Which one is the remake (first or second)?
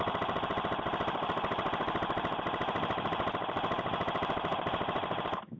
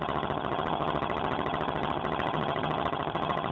second